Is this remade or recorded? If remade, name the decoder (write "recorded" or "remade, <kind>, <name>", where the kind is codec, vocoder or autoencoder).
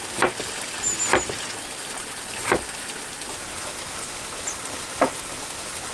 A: recorded